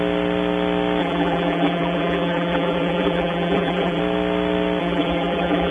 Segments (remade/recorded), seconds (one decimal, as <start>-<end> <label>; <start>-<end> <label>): 0.0-1.0 recorded; 1.0-4.0 remade; 4.0-4.8 recorded; 4.8-5.7 remade